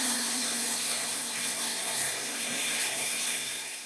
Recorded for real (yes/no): no